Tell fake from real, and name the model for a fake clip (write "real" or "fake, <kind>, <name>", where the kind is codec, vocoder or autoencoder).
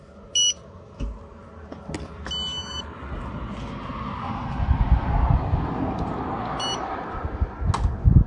real